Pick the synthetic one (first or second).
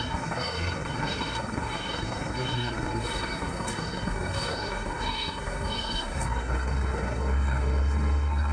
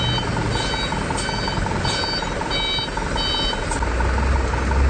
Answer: first